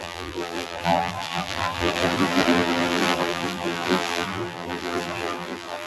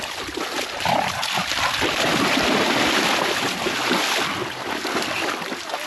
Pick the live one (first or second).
second